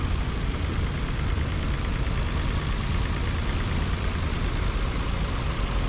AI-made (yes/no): yes